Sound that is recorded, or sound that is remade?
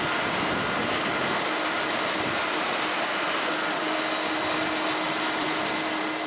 recorded